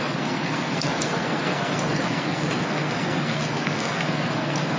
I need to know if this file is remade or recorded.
remade